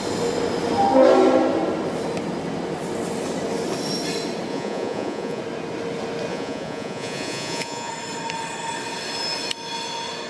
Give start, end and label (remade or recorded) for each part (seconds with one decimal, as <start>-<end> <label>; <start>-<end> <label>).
0.0-4.5 recorded; 4.5-5.4 remade; 5.4-6.3 recorded; 6.3-7.9 remade; 7.9-10.3 recorded